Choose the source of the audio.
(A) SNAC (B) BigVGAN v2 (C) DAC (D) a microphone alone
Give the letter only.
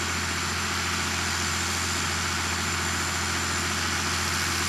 D